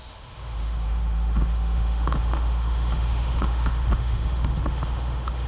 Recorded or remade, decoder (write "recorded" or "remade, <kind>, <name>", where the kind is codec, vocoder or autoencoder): remade, autoencoder, DAC-VAE